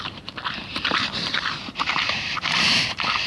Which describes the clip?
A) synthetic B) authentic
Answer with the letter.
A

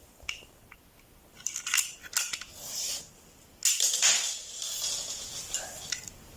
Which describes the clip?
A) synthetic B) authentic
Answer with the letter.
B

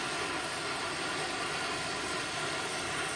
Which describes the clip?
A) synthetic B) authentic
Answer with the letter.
B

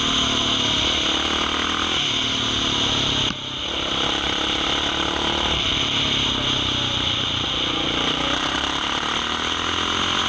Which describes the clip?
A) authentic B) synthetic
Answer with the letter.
A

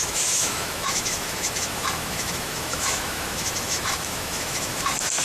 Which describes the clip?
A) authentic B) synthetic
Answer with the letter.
B